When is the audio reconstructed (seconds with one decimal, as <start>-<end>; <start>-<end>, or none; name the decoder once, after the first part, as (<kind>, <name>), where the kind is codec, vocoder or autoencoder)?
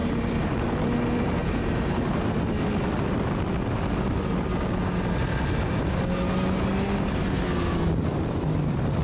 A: 0.0-0.5 (vocoder, BigVGAN v2); 1.4-2.2; 8.1-9.0